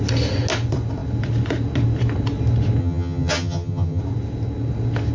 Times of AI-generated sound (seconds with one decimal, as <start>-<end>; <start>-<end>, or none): 2.8-4.0